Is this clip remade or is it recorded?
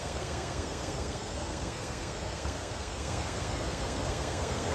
remade